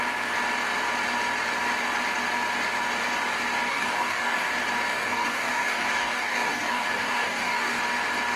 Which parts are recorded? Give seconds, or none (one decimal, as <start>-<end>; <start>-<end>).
0.0-3.7; 4.5-4.9; 7.8-8.4